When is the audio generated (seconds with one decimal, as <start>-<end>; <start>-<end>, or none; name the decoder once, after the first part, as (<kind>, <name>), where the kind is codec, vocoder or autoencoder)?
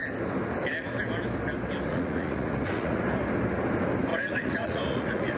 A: 1.9-3.0 (vocoder, Vocos); 4.1-5.4